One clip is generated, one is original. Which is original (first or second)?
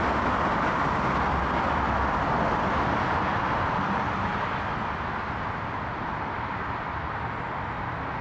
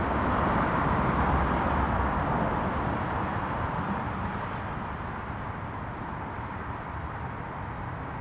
first